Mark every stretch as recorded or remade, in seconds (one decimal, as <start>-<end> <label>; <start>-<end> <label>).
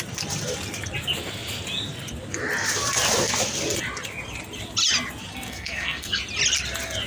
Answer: 0.0-5.3 recorded; 5.3-6.2 remade; 6.2-7.1 recorded